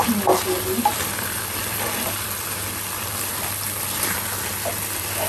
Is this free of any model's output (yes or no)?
no